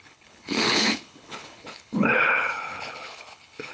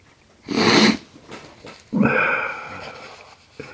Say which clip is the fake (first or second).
first